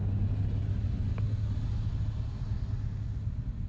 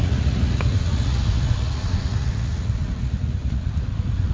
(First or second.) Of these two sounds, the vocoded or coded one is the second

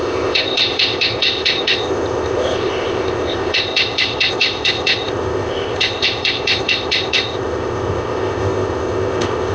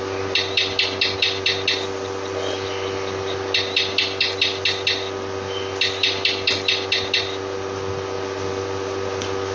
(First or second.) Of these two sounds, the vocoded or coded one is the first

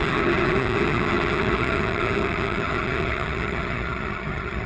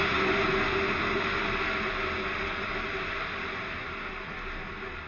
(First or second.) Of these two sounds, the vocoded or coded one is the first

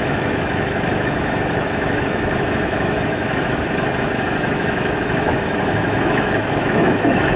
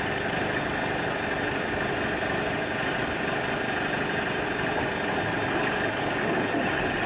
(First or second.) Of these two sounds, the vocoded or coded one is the first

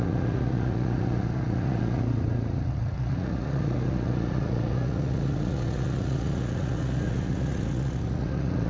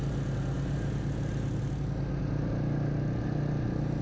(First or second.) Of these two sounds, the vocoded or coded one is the first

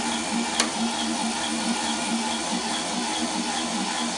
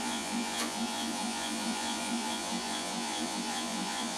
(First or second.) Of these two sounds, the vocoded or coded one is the second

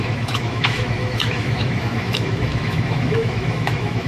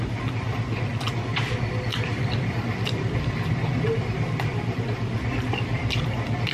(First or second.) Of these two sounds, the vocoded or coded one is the first